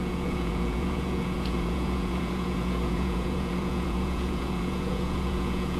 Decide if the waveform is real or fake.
fake